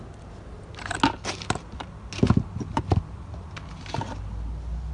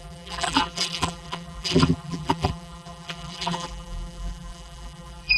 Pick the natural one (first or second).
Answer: first